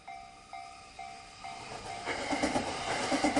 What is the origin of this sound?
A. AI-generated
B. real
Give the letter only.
B